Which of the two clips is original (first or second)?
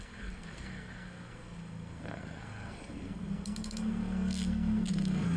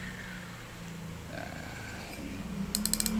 second